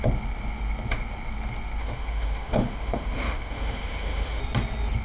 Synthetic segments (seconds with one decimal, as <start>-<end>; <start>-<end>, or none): 1.8-4.4